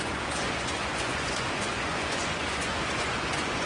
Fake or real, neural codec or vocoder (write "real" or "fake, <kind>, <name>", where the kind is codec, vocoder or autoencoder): fake, vocoder, Vocos